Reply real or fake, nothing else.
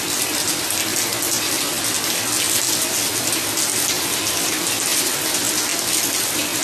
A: real